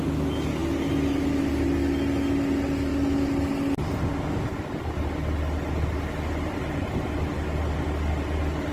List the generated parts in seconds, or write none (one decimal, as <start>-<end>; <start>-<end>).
none